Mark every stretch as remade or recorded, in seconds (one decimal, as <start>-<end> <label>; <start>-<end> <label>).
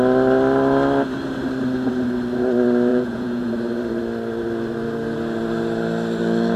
0.0-2.9 recorded; 2.9-3.5 remade; 3.5-6.6 recorded